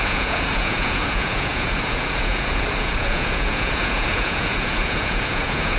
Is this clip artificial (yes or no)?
yes